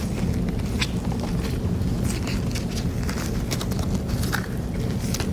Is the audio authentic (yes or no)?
yes